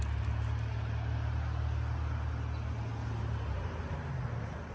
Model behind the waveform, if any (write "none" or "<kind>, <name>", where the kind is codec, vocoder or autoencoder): none